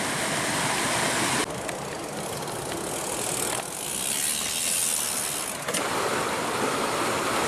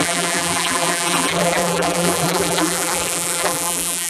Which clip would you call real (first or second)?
first